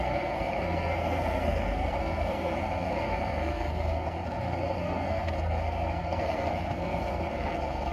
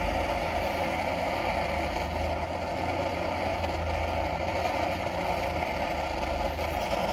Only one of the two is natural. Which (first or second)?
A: second